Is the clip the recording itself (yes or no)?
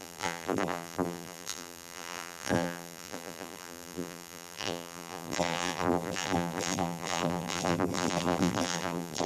no